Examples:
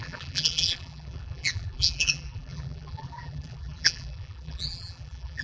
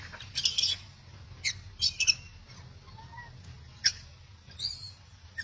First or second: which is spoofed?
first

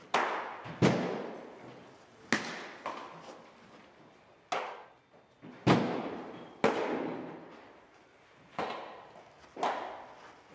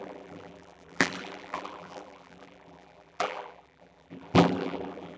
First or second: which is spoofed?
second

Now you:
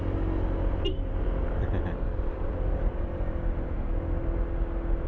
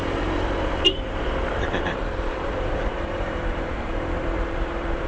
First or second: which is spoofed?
second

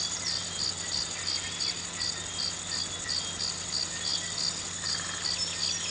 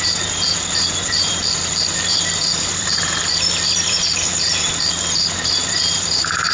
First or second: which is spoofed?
second